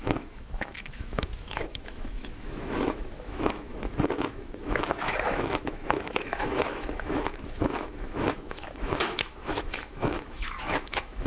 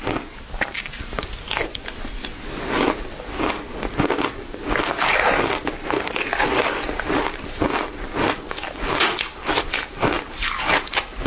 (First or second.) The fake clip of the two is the first